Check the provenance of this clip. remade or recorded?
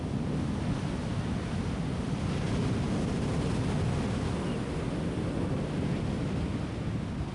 recorded